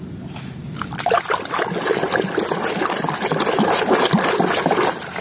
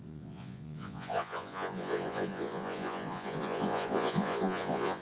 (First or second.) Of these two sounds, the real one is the first